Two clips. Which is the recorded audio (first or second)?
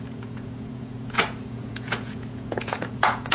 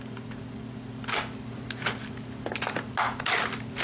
second